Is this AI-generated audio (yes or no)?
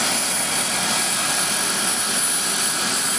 no